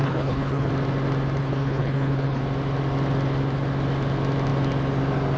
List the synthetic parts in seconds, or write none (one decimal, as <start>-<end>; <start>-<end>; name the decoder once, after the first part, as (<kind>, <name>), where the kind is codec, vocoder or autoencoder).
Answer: 0.0-0.7 (codec, HILCodec); 1.4-2.4